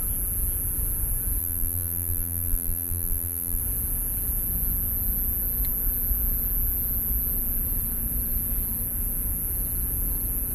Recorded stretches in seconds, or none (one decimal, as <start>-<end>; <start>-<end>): 0.0-1.4; 3.6-10.5